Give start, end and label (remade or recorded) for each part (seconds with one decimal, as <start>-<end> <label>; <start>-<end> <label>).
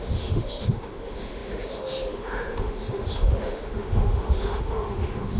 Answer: 0.0-5.4 remade